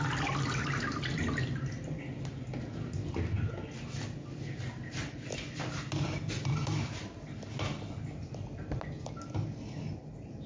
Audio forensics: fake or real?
real